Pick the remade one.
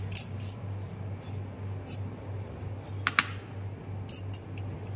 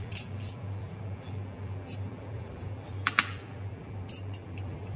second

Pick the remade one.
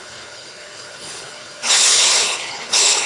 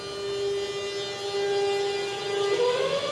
first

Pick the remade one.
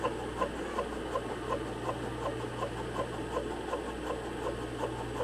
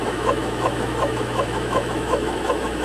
second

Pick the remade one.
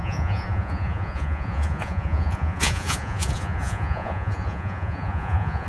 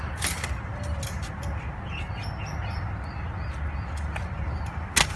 first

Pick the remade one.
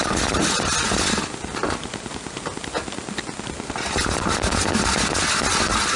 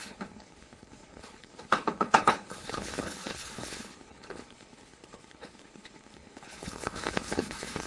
second